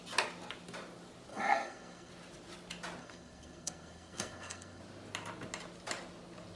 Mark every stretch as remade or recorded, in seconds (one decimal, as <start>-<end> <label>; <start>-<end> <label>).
0.0-1.3 recorded; 1.3-2.1 remade; 2.1-3.0 recorded; 3.0-4.8 remade; 4.8-6.6 recorded